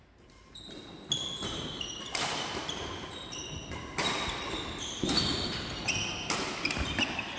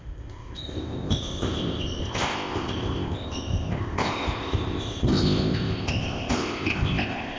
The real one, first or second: first